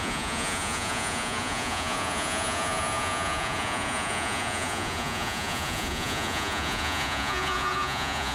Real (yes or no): no